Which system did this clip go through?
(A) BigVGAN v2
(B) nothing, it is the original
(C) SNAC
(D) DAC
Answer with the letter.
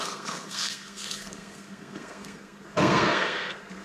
C